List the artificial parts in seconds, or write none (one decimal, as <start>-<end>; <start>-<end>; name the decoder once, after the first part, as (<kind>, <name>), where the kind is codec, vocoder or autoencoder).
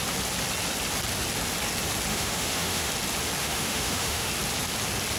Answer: 2.1-2.9 (autoencoder, DAC-VAE); 3.4-4.3